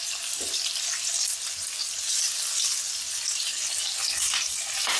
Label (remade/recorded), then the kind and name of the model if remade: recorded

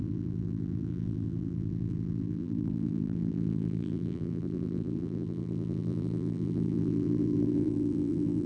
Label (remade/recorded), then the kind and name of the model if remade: remade, vocoder, BigVGAN v2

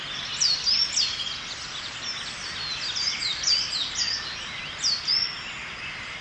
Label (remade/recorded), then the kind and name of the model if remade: recorded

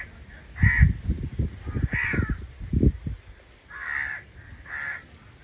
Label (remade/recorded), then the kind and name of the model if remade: recorded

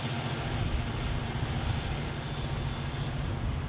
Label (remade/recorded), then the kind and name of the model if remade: recorded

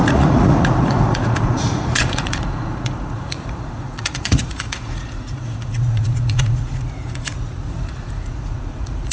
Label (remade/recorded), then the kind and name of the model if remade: remade, vocoder, Vocos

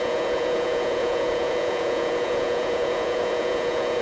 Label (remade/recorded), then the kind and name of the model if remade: remade, vocoder, Vocos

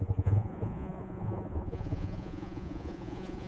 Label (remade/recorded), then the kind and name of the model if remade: remade, vocoder, Vocos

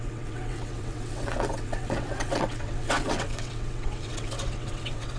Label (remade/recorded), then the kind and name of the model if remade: remade, vocoder, WaveNeXt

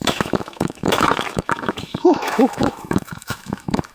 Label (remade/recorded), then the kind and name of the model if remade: remade, autoencoder, DAC-VAE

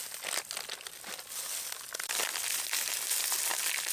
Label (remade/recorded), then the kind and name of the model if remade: recorded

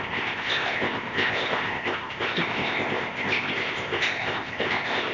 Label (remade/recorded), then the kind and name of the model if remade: remade, codec, ZipCodec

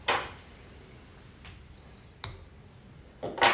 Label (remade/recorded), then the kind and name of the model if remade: recorded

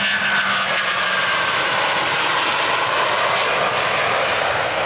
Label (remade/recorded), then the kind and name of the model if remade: recorded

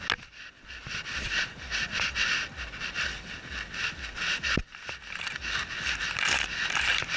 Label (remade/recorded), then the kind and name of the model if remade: recorded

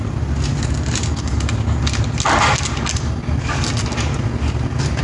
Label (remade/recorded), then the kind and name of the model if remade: recorded